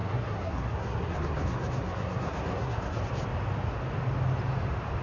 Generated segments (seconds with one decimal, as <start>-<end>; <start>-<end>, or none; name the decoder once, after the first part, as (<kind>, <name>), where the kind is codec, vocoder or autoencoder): 0.0-3.0 (codec, SNAC)